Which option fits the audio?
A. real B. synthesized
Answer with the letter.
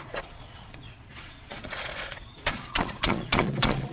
B